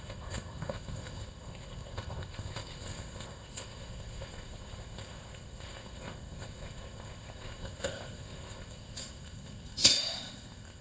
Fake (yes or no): yes